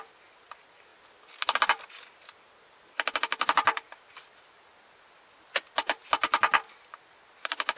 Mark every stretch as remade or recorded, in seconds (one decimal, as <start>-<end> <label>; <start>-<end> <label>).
0.0-7.8 recorded